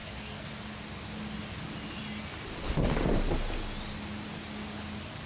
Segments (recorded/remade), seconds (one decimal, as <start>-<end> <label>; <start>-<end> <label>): 0.0-0.5 remade; 0.5-5.3 recorded